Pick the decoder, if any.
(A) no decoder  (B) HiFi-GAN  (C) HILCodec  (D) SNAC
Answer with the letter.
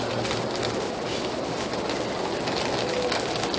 A